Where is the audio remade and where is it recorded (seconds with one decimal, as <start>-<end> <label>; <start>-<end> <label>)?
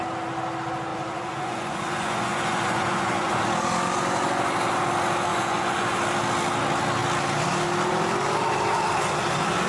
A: 0.0-0.9 recorded; 0.9-3.4 remade; 3.4-5.3 recorded; 5.3-6.0 remade; 6.0-9.7 recorded